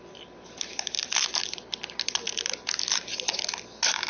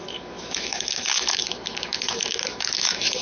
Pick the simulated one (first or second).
second